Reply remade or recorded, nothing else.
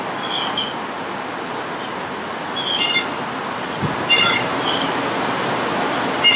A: recorded